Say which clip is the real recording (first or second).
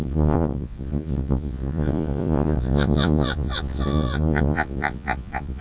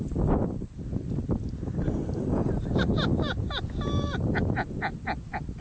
second